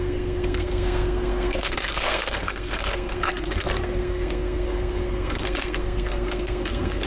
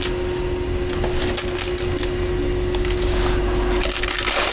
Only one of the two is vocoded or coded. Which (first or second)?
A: first